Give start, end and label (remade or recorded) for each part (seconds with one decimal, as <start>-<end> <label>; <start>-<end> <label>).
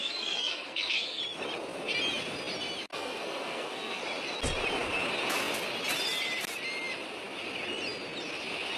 0.0-1.2 remade; 1.2-2.9 recorded; 2.9-4.0 remade; 4.0-8.8 recorded